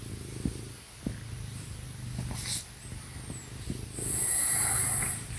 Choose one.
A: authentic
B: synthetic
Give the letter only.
A